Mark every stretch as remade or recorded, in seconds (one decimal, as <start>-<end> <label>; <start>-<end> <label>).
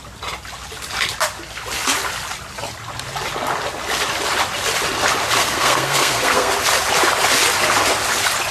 0.0-5.4 recorded; 5.4-6.5 remade; 6.5-8.5 recorded